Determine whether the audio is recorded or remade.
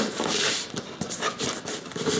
remade